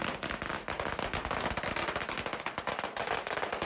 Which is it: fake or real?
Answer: real